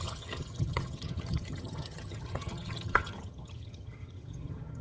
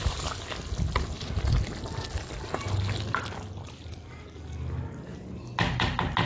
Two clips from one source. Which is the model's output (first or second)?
first